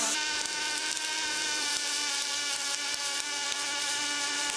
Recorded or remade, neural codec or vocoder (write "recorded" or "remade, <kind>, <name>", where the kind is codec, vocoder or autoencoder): remade, vocoder, BigVGAN v2